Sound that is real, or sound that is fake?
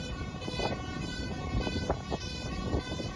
real